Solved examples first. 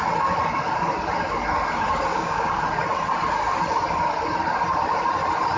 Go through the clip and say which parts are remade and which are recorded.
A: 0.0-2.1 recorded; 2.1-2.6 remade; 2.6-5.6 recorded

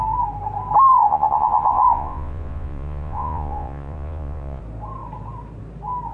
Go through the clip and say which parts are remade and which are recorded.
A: 0.0-0.9 recorded; 0.9-4.6 remade; 4.6-6.1 recorded

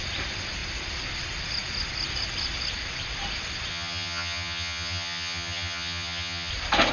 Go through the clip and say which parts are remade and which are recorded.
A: 0.0-3.7 recorded; 3.7-6.5 remade; 6.5-6.9 recorded

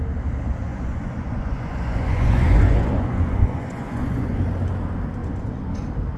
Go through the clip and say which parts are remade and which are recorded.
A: 0.0-0.7 recorded; 0.7-4.4 remade; 4.4-5.2 recorded; 5.2-5.8 remade; 5.8-6.2 recorded

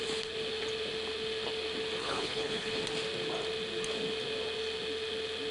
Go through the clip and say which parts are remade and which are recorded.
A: 0.0-2.0 recorded; 2.0-2.8 remade; 2.8-5.5 recorded

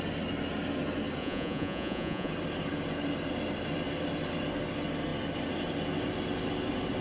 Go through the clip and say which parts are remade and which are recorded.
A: 0.0-1.2 recorded; 1.2-2.3 remade; 2.3-7.0 recorded

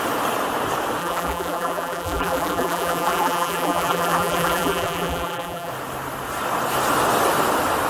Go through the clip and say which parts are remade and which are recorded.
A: 0.0-1.0 recorded; 1.0-5.7 remade; 5.7-7.9 recorded